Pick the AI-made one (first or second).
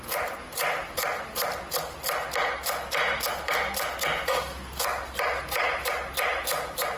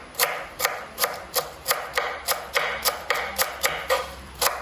second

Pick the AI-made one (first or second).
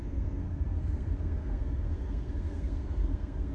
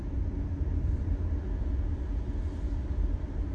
first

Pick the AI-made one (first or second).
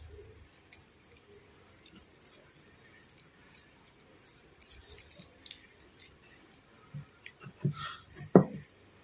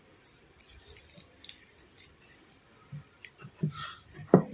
second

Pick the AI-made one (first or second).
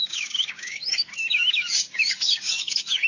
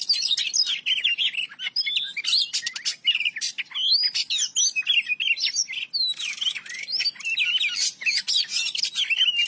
first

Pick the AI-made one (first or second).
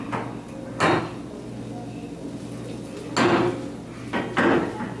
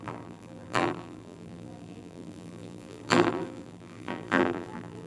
second